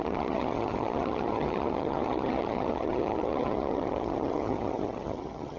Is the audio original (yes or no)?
no